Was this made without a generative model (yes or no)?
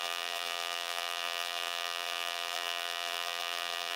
no